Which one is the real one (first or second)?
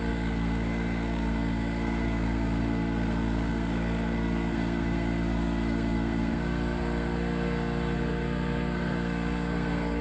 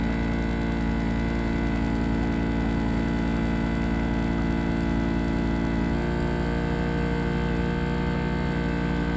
second